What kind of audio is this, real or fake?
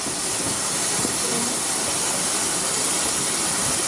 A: real